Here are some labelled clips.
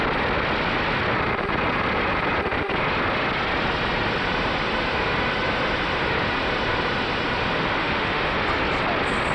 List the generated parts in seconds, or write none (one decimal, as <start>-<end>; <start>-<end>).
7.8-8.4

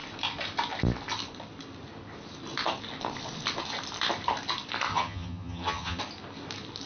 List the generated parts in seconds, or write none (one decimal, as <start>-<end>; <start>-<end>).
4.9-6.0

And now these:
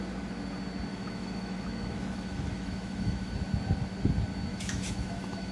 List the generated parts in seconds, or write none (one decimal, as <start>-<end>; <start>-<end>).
0.9-3.3; 4.5-5.5

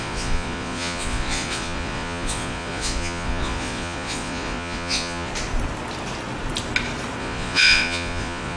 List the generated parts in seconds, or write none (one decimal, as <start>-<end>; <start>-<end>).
0.0-5.3; 7.2-8.6

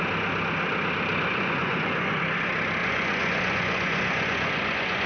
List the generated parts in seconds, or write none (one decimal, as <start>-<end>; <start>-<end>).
1.3-2.2; 2.8-5.1

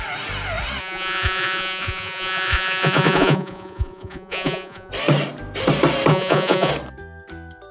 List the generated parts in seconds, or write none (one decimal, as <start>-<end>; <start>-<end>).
0.8-4.9; 6.1-6.7

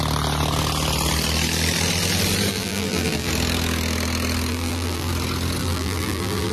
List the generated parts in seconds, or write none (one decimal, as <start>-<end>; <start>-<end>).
2.5-3.3; 4.5-5.1; 5.6-6.5